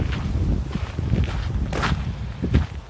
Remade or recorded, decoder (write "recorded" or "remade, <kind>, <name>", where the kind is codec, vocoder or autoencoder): recorded